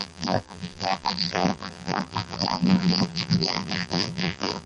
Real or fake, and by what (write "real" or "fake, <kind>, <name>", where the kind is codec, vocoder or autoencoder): fake, vocoder, BigVGAN v2